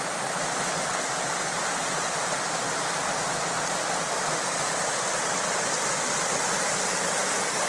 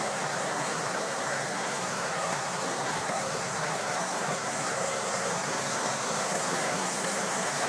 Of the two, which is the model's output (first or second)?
second